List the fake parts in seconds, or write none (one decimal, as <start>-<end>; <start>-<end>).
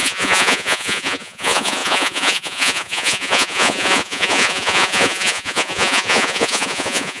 0.0-7.2